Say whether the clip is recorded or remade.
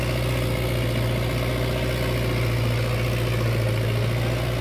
recorded